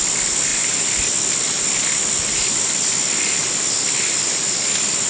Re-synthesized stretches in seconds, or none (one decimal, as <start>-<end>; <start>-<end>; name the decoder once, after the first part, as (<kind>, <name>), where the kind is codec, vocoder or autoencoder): none

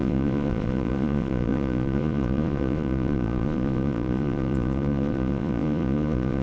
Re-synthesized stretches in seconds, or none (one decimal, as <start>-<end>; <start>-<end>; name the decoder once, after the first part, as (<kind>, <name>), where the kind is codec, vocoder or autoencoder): 0.0-6.4 (vocoder, Vocos)

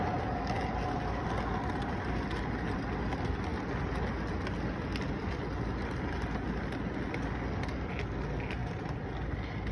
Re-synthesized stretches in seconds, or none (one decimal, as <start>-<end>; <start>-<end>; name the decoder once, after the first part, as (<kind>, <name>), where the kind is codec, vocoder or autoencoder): none

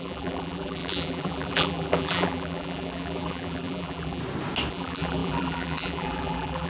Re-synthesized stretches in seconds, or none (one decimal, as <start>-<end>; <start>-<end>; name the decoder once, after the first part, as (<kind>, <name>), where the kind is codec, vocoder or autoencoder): 0.0-4.2 (vocoder, BigVGAN v2); 4.7-6.7

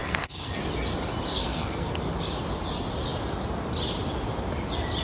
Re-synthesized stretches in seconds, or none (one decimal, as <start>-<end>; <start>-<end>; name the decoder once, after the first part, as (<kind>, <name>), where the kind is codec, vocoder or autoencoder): 0.0-0.6 (codec, SNAC); 1.3-1.9

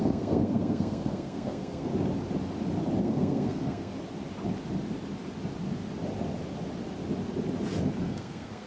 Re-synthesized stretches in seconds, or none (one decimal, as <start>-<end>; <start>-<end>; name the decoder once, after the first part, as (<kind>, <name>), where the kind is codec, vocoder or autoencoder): 0.0-1.9 (codec, SNAC); 3.0-3.9; 8.0-8.7

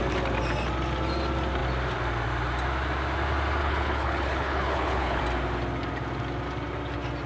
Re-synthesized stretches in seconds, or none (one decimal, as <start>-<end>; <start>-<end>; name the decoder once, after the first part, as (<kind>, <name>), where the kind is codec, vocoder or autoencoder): 3.6-5.2 (codec, HILCodec)

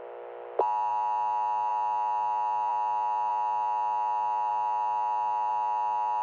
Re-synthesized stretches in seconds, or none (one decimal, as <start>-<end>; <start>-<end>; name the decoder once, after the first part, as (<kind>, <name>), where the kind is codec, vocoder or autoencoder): none